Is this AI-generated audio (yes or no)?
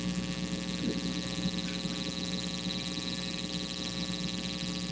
no